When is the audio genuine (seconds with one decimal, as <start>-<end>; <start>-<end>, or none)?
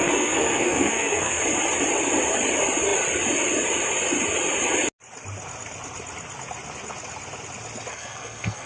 1.4-7.9